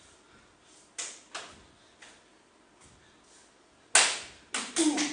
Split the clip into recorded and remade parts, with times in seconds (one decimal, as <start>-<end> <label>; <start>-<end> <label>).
0.0-5.1 recorded